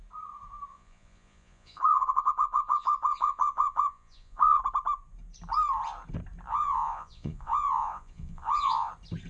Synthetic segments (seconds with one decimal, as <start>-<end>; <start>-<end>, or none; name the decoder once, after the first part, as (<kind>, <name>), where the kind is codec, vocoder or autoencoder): 0.7-4.6 (vocoder, Vocos); 6.5-8.9